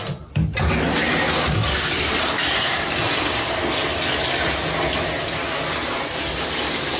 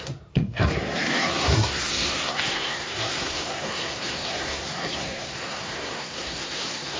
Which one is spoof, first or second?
second